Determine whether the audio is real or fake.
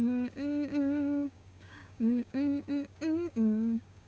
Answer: fake